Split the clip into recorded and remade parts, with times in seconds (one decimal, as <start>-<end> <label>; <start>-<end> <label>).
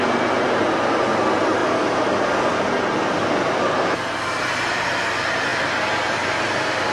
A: 0.0-1.6 recorded; 1.6-2.8 remade; 2.8-5.5 recorded; 5.5-6.9 remade